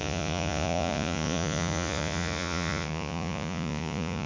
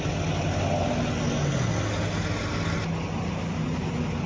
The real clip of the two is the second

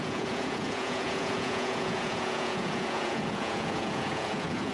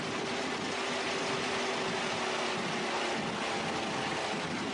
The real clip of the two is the second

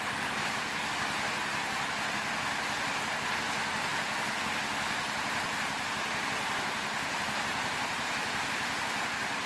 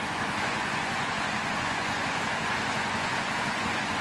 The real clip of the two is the first